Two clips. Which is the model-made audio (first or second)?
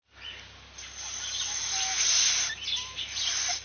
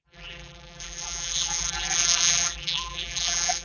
second